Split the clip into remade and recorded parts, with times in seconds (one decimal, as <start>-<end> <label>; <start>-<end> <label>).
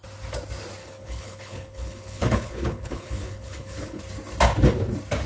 0.0-0.8 recorded; 0.8-4.0 remade; 4.0-5.3 recorded